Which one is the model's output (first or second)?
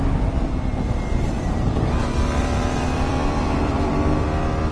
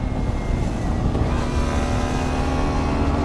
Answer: first